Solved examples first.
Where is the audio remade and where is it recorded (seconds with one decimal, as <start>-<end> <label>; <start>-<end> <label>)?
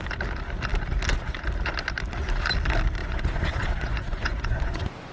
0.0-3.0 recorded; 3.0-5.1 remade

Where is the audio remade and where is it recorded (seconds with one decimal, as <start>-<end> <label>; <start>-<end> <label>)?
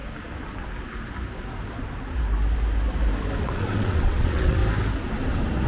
0.0-3.4 recorded; 3.4-4.6 remade; 4.6-5.7 recorded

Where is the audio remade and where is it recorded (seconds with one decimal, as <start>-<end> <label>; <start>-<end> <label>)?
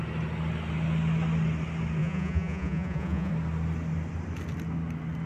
0.0-2.0 recorded; 2.0-3.3 remade; 3.3-5.3 recorded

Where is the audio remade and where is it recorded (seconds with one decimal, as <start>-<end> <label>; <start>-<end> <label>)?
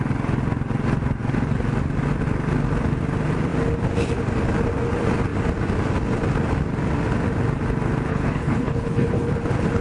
0.0-8.1 recorded; 8.1-9.3 remade; 9.3-9.8 recorded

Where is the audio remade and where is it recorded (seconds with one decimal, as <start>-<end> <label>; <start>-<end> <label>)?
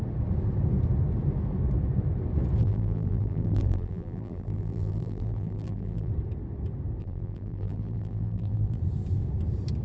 0.0-2.6 recorded; 2.6-6.1 remade; 6.1-7.0 recorded; 7.0-8.8 remade; 8.8-9.8 recorded